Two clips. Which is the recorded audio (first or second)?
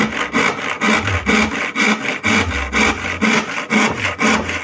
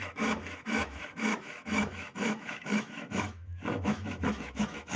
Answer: first